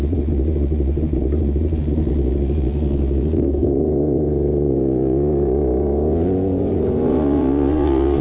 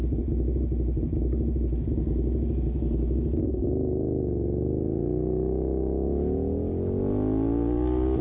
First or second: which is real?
second